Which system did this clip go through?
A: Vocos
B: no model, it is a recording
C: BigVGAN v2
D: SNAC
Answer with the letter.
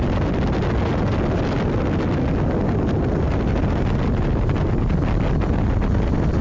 B